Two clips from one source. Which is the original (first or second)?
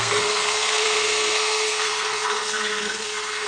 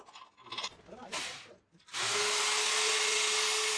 second